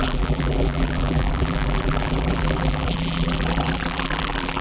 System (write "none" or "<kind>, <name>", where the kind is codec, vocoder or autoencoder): vocoder, BigVGAN v2